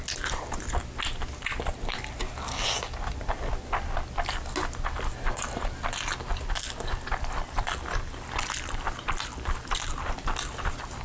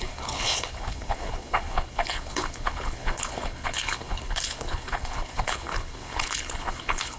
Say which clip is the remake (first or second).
second